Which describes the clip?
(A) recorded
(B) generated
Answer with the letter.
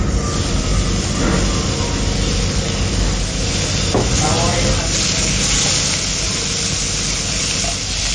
A